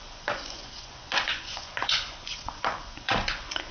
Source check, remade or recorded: remade